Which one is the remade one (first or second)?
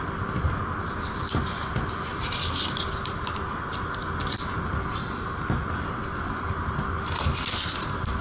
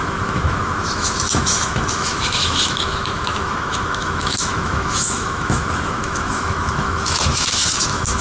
second